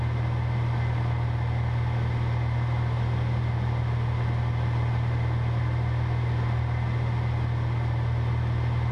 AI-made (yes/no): no